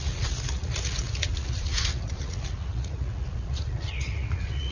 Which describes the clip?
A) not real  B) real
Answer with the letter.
A